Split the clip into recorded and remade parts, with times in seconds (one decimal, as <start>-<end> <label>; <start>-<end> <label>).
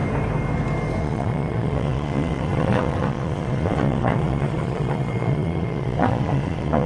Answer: 0.0-1.0 recorded; 1.0-6.9 remade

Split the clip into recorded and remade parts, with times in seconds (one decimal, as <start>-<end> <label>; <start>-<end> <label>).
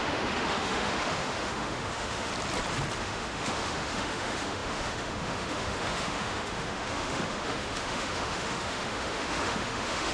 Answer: 0.0-2.3 remade; 2.3-3.0 recorded; 3.0-10.1 remade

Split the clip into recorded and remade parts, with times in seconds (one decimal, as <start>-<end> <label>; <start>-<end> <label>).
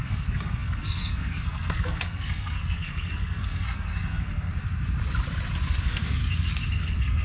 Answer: 0.0-4.5 remade; 4.5-5.8 recorded; 5.8-6.2 remade; 6.2-6.7 recorded; 6.7-7.2 remade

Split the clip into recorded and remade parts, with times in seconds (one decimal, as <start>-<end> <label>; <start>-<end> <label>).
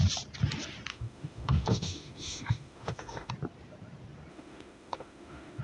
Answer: 0.0-0.9 recorded; 0.9-3.3 remade; 3.3-4.3 recorded; 4.3-5.6 remade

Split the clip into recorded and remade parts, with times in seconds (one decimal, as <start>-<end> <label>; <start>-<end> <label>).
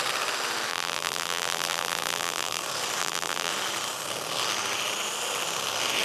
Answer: 0.0-0.7 recorded; 0.7-2.6 remade; 2.6-3.0 recorded; 3.0-3.5 remade; 3.5-6.0 recorded